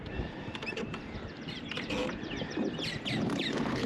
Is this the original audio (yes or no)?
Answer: yes